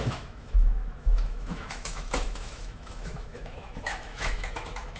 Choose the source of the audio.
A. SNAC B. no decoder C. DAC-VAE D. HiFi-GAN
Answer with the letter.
C